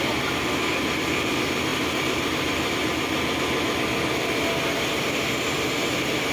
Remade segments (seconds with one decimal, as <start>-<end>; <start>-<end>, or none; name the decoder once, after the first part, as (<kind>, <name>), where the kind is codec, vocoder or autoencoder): 1.7-2.8 (vocoder, BigVGAN v2)